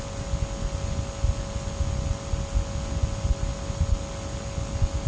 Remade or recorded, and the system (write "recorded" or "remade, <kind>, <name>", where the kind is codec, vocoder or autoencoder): recorded